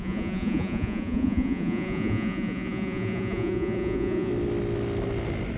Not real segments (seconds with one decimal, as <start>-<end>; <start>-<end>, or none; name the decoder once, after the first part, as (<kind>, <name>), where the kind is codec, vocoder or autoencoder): 0.0-4.3 (vocoder, Vocos)